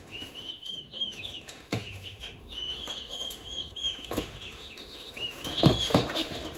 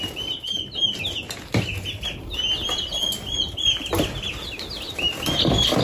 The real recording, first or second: second